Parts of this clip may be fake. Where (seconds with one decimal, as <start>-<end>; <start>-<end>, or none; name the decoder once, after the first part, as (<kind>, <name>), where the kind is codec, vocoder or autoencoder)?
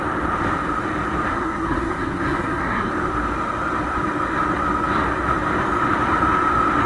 1.3-2.9 (codec, SNAC)